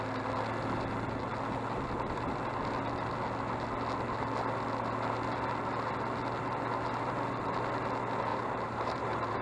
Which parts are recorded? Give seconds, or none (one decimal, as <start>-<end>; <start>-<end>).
0.0-8.3